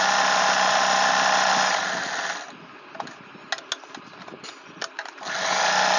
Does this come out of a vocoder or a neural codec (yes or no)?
no